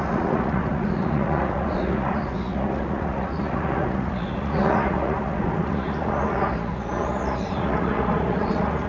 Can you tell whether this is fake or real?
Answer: fake